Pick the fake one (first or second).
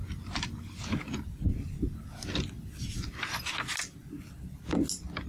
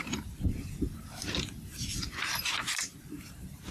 second